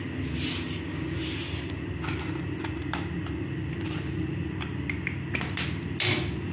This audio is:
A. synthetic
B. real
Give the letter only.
B